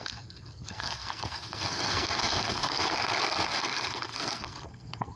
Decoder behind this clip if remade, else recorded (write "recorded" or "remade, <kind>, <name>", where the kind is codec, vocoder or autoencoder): remade, codec, SNAC